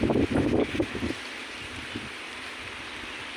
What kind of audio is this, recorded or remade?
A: remade